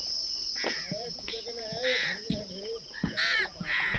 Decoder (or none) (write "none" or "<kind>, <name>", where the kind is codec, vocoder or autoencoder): vocoder, Vocos